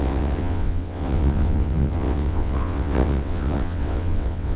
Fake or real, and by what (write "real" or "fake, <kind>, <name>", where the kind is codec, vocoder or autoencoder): fake, vocoder, WaveNeXt